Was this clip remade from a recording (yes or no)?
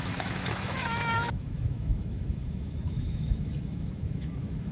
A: yes